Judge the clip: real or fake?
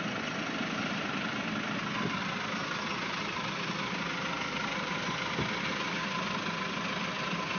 real